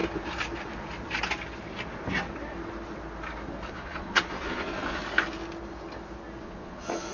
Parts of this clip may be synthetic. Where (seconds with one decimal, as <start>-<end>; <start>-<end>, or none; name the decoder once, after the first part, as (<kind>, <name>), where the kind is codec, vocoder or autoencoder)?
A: 3.7-5.0 (vocoder, Vocos); 6.4-7.1